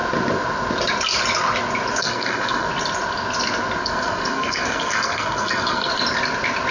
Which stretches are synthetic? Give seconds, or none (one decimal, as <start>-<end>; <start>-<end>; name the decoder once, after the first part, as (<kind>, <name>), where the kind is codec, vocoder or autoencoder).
2.0-2.7 (codec, SNAC); 3.8-5.9